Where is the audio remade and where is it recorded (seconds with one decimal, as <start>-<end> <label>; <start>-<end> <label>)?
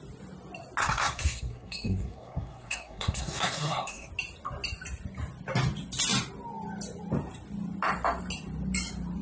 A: 0.0-0.8 recorded; 0.8-4.1 remade; 4.1-9.2 recorded